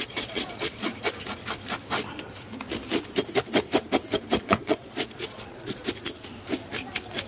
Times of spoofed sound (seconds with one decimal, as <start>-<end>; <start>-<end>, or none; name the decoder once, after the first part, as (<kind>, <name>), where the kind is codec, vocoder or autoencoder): 0.0-0.9 (vocoder, Vocos); 4.4-5.8